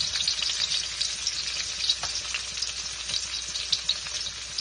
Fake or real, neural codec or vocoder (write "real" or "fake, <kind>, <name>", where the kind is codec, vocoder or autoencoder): real